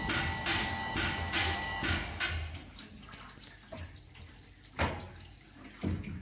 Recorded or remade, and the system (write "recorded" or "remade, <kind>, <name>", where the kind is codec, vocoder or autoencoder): recorded